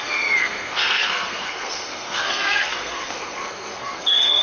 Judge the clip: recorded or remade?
remade